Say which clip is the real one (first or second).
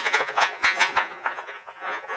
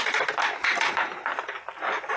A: second